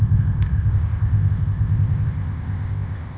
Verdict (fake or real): fake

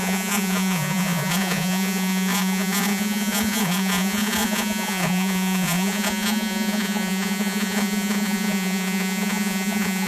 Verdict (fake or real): fake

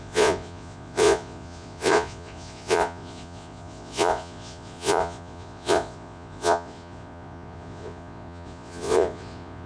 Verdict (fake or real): fake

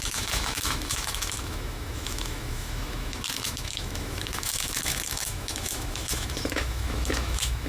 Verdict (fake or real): fake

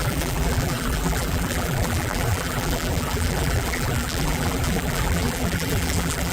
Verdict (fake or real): fake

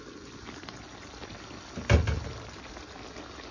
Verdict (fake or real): real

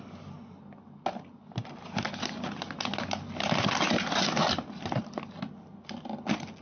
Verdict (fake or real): real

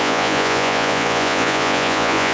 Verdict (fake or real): fake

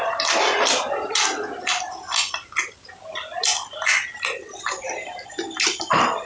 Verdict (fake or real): real